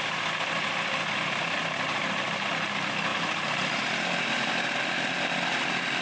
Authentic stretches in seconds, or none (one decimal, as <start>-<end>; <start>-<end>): 0.0-6.0